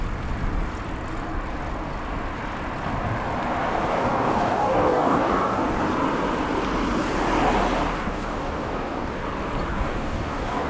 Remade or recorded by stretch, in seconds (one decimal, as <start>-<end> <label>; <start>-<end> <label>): 0.0-3.9 recorded; 3.9-5.8 remade; 5.8-7.9 recorded; 7.9-9.1 remade; 9.1-9.7 recorded; 9.7-10.7 remade